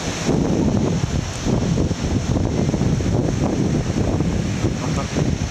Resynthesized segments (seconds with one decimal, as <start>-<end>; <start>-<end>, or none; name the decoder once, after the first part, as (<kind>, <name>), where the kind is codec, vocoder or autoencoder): none